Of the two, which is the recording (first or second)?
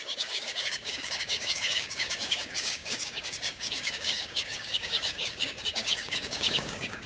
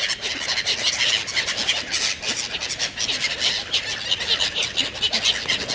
second